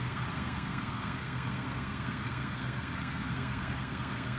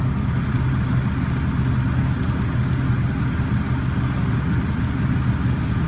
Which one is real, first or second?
second